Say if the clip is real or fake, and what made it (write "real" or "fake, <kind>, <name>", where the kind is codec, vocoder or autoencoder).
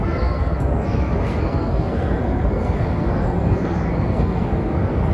fake, codec, SNAC